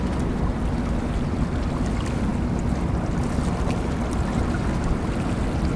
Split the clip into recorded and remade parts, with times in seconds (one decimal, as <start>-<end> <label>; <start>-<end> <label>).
0.0-5.8 recorded